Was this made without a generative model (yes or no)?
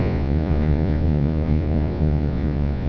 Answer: no